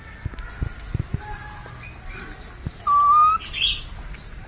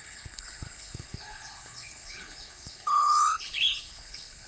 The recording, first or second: first